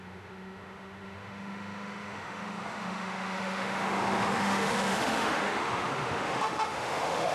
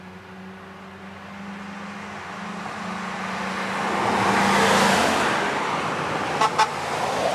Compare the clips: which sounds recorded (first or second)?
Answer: second